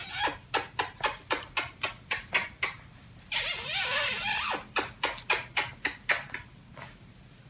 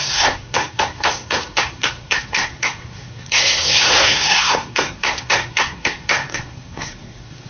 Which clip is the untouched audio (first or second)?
first